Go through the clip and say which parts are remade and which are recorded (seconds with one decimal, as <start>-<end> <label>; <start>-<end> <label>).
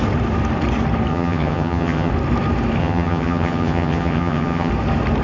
0.0-1.1 recorded; 1.1-2.1 remade; 2.1-2.8 recorded; 2.8-4.7 remade; 4.7-5.2 recorded